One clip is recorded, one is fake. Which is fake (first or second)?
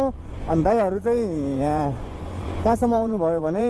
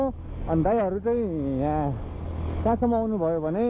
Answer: first